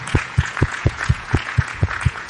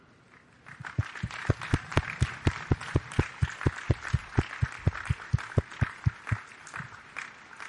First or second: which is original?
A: second